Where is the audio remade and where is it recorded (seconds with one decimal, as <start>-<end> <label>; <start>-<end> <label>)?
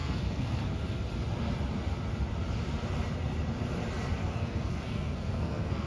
0.0-0.6 remade; 0.6-4.2 recorded; 4.2-5.9 remade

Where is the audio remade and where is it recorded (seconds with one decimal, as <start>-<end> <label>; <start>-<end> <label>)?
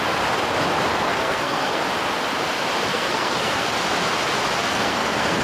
0.0-0.9 recorded; 0.9-1.8 remade; 1.8-2.9 recorded; 2.9-3.7 remade; 3.7-4.7 recorded; 4.7-5.4 remade